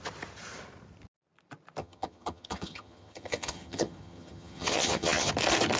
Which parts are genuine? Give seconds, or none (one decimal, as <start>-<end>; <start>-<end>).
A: 0.0-1.8; 5.3-5.8